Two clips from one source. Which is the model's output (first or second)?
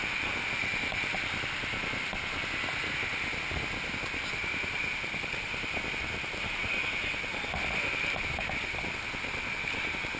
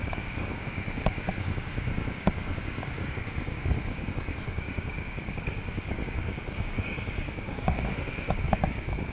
second